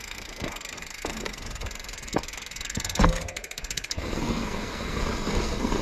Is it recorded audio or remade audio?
remade